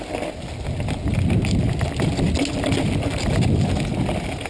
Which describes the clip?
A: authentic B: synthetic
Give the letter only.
A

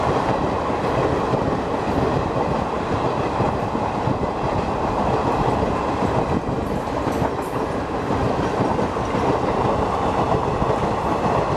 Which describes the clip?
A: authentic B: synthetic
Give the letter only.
A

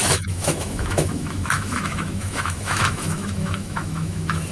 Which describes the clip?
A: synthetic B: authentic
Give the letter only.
A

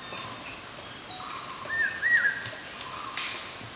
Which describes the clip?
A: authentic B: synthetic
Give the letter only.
A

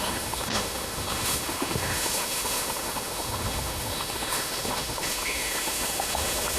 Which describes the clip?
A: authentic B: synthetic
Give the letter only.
B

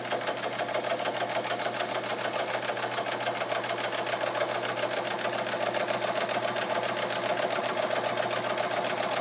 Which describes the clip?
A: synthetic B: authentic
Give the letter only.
B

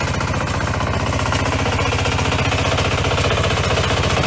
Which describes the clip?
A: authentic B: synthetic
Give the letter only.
A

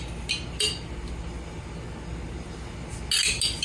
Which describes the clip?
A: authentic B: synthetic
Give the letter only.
A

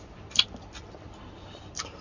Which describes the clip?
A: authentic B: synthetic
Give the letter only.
A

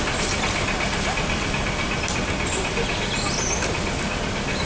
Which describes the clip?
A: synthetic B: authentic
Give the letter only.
B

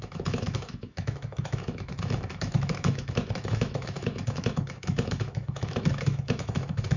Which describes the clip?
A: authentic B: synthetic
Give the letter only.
B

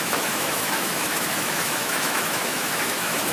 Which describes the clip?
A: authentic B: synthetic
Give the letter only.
B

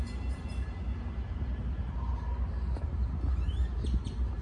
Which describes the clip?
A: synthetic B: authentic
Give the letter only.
B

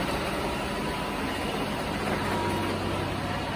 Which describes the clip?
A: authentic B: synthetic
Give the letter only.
A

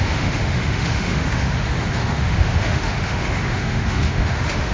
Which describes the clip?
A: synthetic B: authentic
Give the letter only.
A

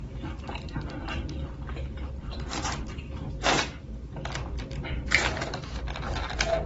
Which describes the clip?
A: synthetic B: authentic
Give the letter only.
B